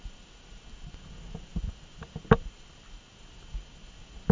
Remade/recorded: recorded